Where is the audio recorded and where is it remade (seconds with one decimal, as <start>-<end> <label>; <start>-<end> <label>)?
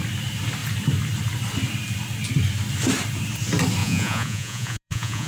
0.0-3.8 recorded; 3.8-5.3 remade